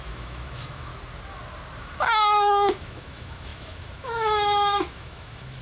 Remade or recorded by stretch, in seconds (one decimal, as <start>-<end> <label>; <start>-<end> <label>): 0.0-0.9 remade; 0.9-1.8 recorded; 1.8-5.6 remade

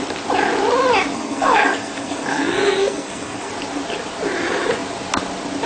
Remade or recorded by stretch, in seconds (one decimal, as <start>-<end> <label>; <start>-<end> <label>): 0.0-1.1 recorded; 1.1-3.5 remade; 3.5-5.7 recorded

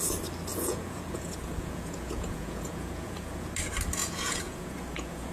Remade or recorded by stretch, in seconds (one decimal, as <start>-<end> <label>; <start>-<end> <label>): 0.0-0.5 recorded; 0.5-3.5 remade; 3.5-4.0 recorded; 4.0-5.3 remade